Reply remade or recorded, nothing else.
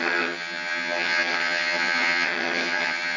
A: remade